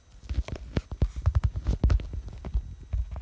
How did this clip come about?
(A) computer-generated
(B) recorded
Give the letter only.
B